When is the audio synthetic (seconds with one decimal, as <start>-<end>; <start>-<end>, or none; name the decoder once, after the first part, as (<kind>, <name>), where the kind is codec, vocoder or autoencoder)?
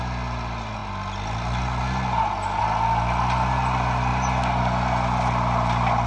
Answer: none